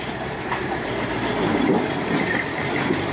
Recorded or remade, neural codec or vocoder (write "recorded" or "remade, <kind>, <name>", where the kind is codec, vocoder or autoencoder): remade, vocoder, BigVGAN v2